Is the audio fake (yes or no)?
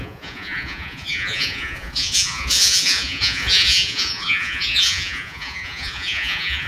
yes